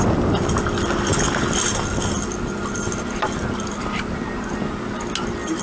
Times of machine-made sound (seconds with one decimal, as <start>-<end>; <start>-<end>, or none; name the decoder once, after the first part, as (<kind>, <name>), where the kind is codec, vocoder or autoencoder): none